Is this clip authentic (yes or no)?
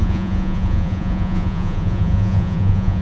no